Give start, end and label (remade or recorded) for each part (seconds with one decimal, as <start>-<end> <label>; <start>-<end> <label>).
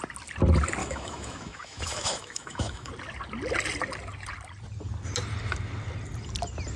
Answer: 0.0-0.8 recorded; 0.8-2.9 remade; 2.9-6.8 recorded